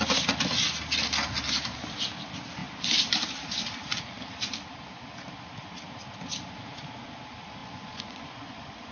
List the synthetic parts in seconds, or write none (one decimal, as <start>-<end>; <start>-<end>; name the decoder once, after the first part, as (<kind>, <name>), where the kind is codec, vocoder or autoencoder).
7.6-8.9 (vocoder, Vocos)